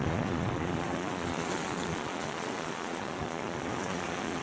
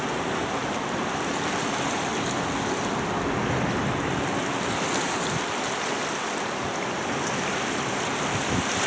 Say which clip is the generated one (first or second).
first